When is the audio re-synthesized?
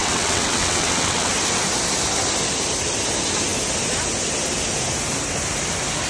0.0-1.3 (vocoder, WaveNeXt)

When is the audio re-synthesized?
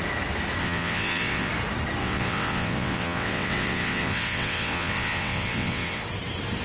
0.6-1.5 (vocoder, WaveNeXt); 2.0-6.0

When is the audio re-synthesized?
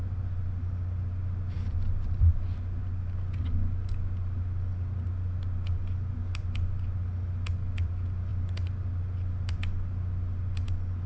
none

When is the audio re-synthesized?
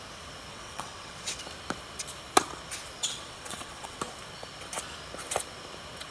0.5-1.4 (vocoder, WaveNeXt); 3.0-4.0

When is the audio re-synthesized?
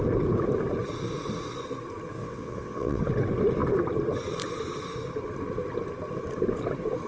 2.2-3.0 (vocoder, WaveNeXt)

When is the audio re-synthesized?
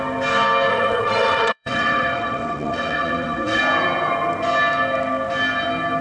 0.7-3.6 (vocoder, WaveNeXt)